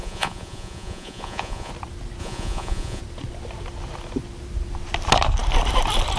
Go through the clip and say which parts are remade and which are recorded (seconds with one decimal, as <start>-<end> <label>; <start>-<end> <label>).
0.0-1.7 remade; 1.7-2.2 recorded; 2.2-3.0 remade; 3.0-6.2 recorded